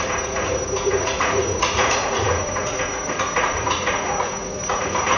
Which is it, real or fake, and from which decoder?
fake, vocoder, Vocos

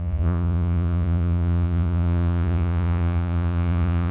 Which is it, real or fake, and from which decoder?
fake, vocoder, Vocos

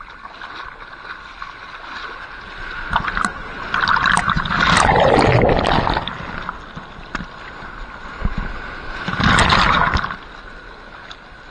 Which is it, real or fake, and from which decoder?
real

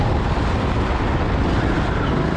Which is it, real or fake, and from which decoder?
real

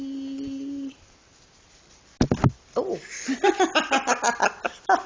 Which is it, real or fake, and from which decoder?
real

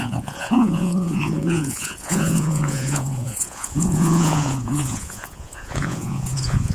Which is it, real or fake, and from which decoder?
fake, vocoder, Vocos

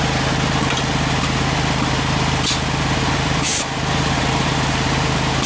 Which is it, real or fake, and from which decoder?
real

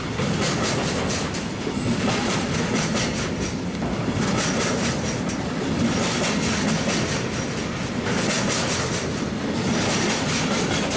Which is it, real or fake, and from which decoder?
real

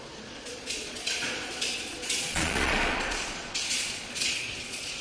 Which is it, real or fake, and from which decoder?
fake, vocoder, Vocos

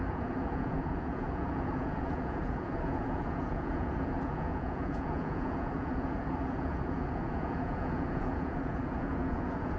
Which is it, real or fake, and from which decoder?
fake, vocoder, Vocos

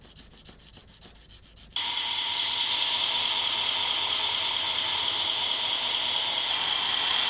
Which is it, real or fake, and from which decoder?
real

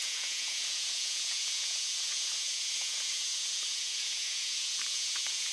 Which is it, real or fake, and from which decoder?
fake, vocoder, Vocos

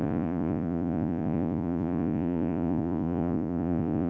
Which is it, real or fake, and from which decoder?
fake, vocoder, Vocos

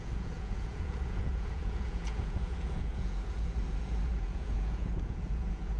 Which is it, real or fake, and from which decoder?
fake, vocoder, Vocos